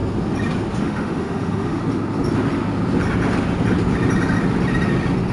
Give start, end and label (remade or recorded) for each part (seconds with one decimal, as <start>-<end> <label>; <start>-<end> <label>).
0.0-0.8 recorded; 0.8-1.8 remade; 1.8-5.3 recorded